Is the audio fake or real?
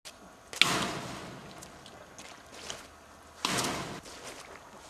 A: real